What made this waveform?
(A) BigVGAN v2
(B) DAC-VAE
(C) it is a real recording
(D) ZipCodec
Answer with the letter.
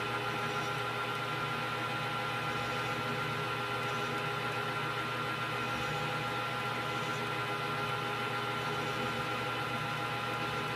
C